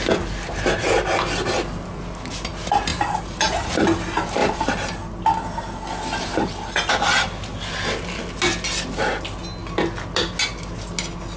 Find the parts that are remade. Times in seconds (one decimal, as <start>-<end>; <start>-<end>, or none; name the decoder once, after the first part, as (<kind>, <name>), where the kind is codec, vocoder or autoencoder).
none

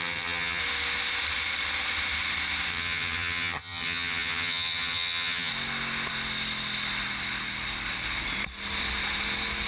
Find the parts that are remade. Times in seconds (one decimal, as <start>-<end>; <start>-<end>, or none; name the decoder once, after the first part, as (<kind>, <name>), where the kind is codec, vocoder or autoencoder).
0.0-0.6 (vocoder, HiFi-GAN); 2.7-5.5

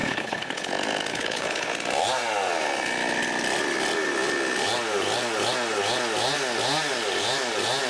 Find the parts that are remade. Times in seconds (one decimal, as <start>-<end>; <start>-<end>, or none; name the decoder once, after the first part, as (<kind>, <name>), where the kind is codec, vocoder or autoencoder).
0.0-0.7 (codec, HILCodec); 1.1-1.7